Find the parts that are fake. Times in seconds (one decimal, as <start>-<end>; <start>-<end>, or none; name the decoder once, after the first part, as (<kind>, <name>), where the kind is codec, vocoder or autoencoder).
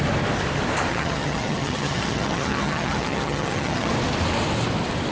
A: 0.9-3.9 (vocoder, HiFi-GAN)